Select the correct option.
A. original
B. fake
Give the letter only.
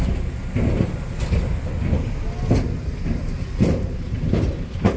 A